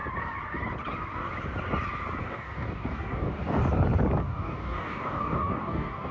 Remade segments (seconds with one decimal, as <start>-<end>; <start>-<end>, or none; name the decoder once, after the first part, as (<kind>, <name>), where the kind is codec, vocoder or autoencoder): 2.2-3.6 (codec, DAC); 4.2-6.1